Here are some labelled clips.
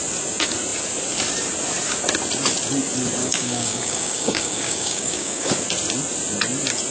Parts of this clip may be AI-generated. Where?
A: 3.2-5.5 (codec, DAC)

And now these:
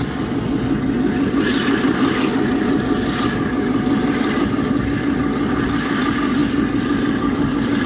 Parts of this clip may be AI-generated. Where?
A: none

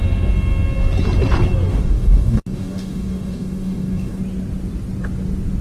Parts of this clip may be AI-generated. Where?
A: 1.7-4.2 (codec, DAC)

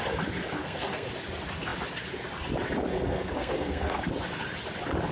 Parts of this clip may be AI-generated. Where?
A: 0.6-1.1 (codec, SNAC); 2.9-4.0

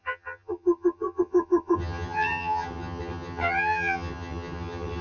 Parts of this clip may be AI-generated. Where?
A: 0.0-5.0 (vocoder, HiFi-GAN)

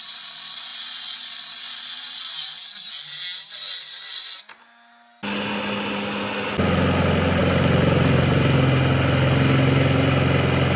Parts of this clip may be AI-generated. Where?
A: none

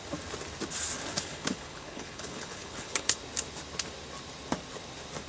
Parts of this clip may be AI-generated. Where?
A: 1.1-3.2 (codec, HILCodec)